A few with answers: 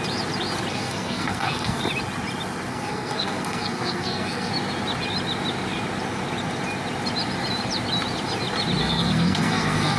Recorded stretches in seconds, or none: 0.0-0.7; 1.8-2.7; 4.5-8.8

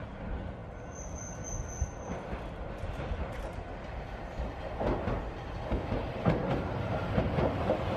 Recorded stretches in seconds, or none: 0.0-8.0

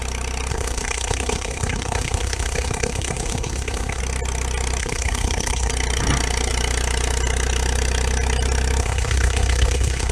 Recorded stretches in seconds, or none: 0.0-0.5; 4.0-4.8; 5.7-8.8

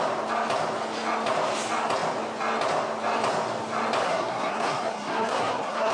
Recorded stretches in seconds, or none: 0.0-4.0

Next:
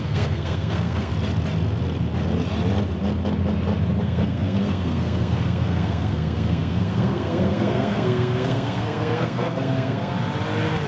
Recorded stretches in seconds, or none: 1.1-4.0; 10.1-10.9

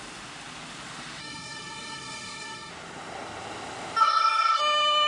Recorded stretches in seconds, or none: 0.0-1.2; 2.7-4.0; 4.6-5.1

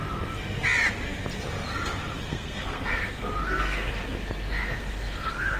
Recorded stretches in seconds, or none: 0.0-2.3; 3.9-4.6

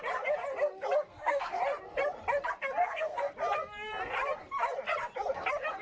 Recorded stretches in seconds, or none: 0.0-1.1; 1.6-2.8; 3.3-5.8